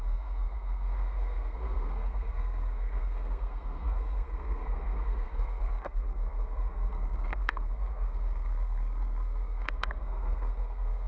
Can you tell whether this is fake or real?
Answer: fake